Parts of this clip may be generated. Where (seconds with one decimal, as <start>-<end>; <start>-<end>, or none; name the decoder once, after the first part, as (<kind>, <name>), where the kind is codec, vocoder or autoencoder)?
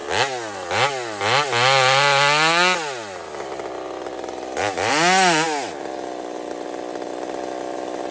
none